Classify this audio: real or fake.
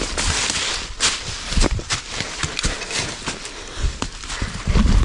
real